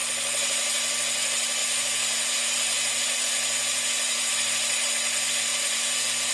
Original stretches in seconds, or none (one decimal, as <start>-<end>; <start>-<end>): 0.0-1.6; 4.3-5.5